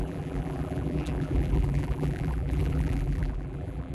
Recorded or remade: remade